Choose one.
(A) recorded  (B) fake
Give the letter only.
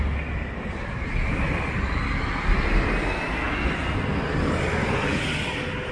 A